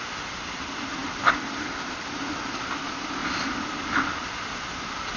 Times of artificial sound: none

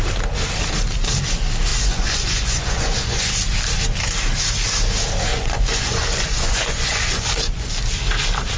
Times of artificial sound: 1.7-3.3 (vocoder, Vocos); 5.3-7.7

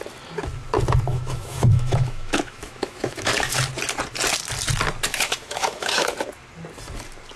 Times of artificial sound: 1.1-3.6 (autoencoder, DAC-VAE); 5.1-6.1

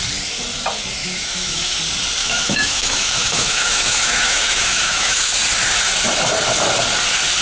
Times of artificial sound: 1.0-1.8 (autoencoder, DAC-VAE); 2.2-5.4

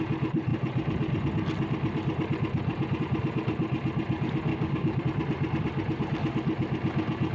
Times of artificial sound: 4.5-5.0 (codec, DAC)

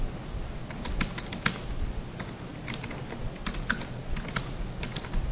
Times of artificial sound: none

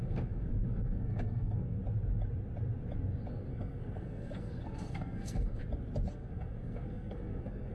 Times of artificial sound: 0.0-1.8 (codec, SNAC); 3.3-5.6; 6.1-7.7

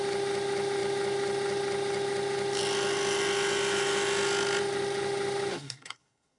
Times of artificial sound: 5.5-6.4 (codec, SNAC)